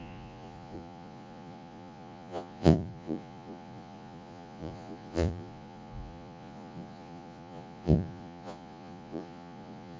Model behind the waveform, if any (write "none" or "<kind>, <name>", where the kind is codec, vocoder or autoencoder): vocoder, Vocos